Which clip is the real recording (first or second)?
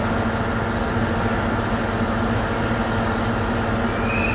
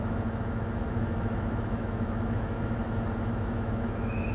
first